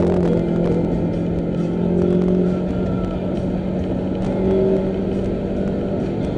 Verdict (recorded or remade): recorded